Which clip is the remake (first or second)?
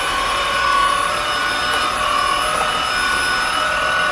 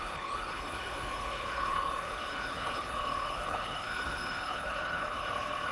second